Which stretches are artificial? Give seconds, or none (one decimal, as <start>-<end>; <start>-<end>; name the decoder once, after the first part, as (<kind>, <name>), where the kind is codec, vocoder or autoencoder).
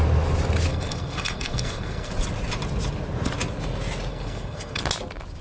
0.7-2.1 (codec, SNAC); 4.1-4.8